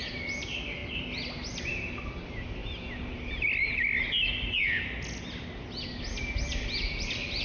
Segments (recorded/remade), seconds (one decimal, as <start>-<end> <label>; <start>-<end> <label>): 0.0-7.4 recorded